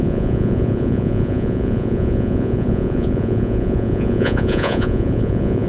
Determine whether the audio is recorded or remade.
remade